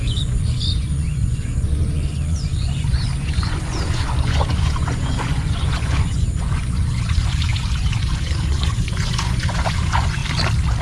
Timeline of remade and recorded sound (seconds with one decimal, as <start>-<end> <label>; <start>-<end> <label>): 0.0-10.2 remade; 10.2-10.8 recorded